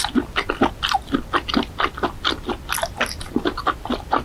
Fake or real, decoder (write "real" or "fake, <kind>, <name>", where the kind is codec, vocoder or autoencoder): real